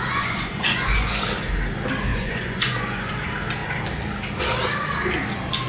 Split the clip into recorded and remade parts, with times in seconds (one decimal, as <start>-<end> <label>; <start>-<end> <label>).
0.0-1.2 remade; 1.2-2.1 recorded; 2.1-3.1 remade; 3.1-5.7 recorded